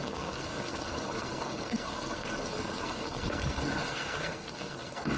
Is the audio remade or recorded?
remade